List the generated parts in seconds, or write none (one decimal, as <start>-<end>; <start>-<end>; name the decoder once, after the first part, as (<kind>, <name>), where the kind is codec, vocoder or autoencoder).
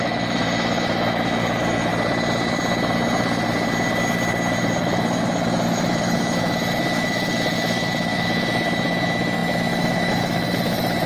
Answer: 0.0-1.9 (autoencoder, DAC-VAE); 4.8-11.1